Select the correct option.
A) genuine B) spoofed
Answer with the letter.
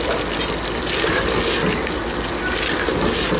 A